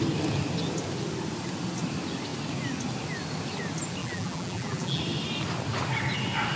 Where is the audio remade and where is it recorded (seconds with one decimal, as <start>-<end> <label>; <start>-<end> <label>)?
0.0-4.0 recorded; 4.0-5.0 remade; 5.0-6.6 recorded